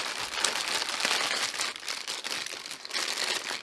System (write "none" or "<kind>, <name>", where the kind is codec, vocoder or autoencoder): none